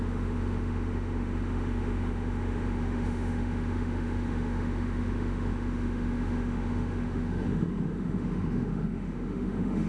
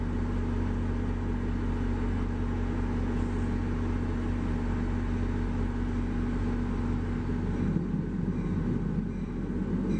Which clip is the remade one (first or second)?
first